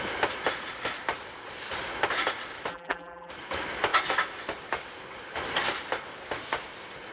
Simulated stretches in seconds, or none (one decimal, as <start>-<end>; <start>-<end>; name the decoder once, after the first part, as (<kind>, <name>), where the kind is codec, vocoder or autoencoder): 2.7-3.3 (vocoder, BigVGAN v2)